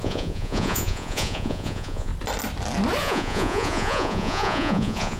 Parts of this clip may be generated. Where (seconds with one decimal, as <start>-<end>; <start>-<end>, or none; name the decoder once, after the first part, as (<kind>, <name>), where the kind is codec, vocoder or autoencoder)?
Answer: 0.0-2.1 (vocoder, Vocos); 3.0-5.2

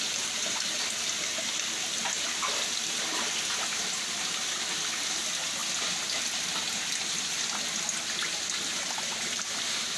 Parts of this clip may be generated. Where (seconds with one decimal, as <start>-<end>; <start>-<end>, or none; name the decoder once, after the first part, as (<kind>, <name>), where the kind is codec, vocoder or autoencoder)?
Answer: none